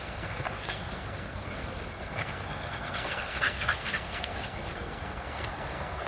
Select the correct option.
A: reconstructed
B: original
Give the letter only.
A